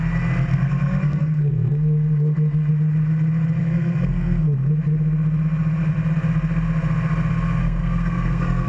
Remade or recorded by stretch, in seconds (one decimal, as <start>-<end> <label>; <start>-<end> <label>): 0.0-0.5 recorded; 0.5-2.7 remade; 2.7-3.6 recorded; 3.6-4.7 remade; 4.7-7.6 recorded; 7.6-8.7 remade